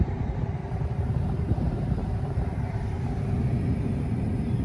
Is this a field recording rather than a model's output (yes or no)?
no